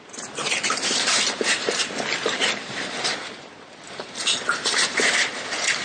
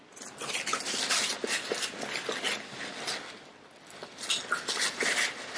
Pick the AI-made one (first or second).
first